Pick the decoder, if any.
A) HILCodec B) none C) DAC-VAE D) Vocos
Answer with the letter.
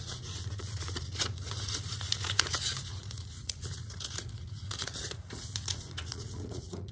D